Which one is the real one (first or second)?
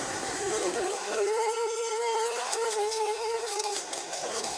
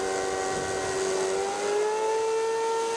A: second